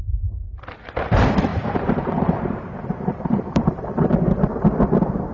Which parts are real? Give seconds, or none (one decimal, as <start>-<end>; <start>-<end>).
0.0-1.5; 4.0-5.3